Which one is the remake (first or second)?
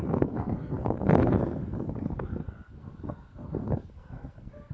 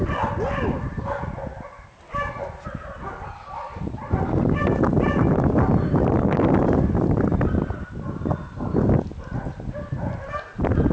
first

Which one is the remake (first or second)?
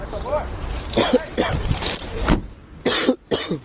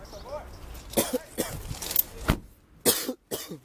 first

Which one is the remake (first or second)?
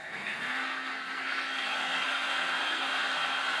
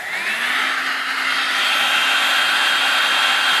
first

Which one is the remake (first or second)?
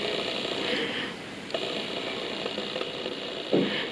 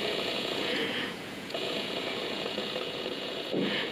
second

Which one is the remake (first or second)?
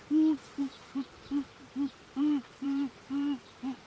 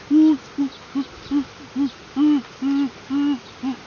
first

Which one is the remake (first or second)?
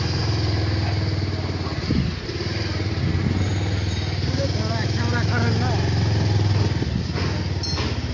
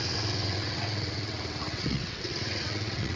second